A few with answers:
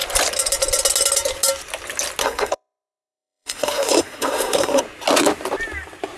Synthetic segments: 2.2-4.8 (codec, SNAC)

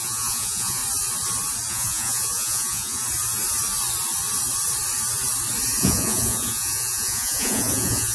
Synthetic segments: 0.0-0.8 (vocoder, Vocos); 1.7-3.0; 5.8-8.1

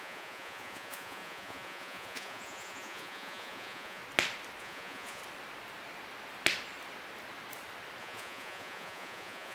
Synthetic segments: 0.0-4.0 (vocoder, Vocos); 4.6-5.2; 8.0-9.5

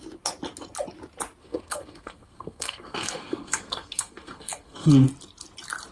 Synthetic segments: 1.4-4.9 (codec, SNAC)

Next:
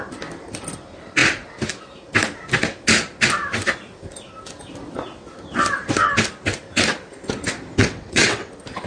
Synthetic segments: 7.8-8.5 (vocoder, WaveNeXt)

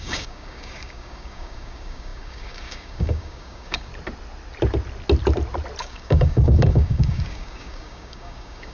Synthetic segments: 0.0-3.9 (codec, DAC); 5.8-8.7

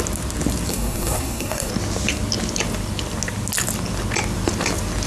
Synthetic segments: 0.7-1.7 (codec, SNAC)

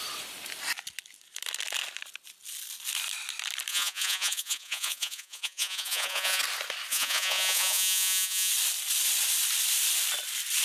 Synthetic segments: 3.7-6.4 (vocoder, Vocos); 6.9-8.5